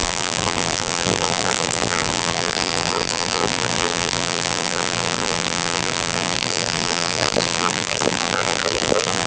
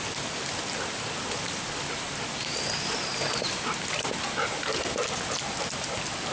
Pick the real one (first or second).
second